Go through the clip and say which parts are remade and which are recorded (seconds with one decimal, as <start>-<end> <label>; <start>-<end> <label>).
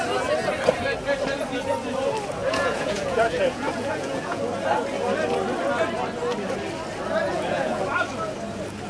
0.0-2.4 recorded; 2.4-4.4 remade; 4.4-7.3 recorded; 7.3-7.8 remade; 7.8-8.9 recorded